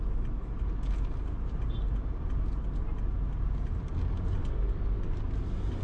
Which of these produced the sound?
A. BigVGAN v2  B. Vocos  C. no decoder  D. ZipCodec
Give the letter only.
C